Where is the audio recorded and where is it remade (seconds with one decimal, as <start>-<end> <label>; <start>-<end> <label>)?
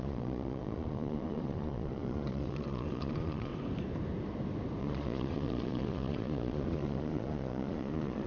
0.0-3.5 remade; 3.5-4.8 recorded; 4.8-8.3 remade